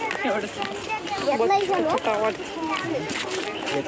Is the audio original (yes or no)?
yes